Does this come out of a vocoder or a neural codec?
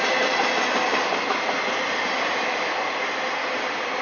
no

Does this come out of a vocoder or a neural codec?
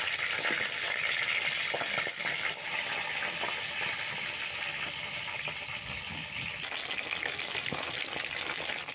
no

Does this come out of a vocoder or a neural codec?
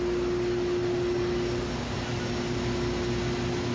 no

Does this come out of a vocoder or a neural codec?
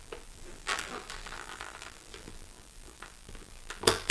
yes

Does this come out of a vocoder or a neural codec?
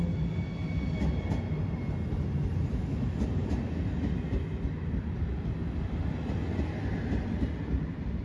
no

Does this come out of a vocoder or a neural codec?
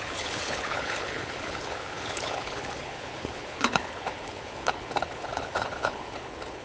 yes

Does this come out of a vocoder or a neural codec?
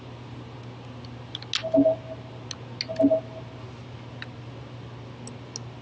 no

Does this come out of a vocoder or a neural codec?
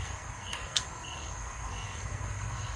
yes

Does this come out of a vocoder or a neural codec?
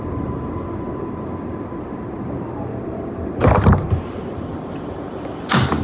yes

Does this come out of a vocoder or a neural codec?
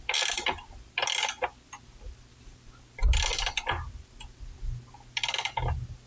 no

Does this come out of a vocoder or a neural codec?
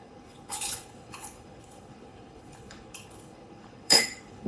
yes